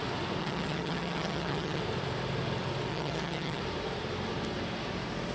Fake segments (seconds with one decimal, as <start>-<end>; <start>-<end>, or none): 0.4-1.8; 2.9-3.6